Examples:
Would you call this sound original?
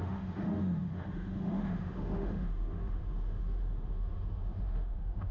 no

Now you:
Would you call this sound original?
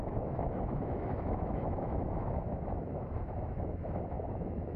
no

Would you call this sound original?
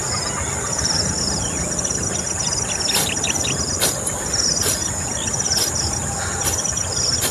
yes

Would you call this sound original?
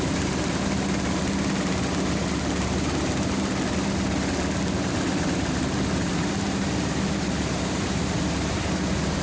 yes